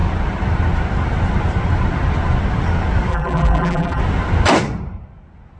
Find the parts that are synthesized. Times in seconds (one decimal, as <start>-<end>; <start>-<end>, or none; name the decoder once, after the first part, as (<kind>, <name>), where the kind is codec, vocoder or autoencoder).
3.1-4.0 (vocoder, BigVGAN v2)